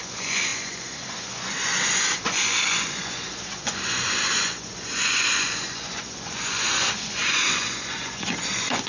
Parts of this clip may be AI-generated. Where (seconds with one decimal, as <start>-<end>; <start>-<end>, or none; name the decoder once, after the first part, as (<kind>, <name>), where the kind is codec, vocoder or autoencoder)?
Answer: 0.0-8.9 (vocoder, Vocos)